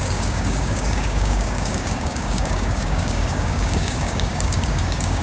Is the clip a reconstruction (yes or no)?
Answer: yes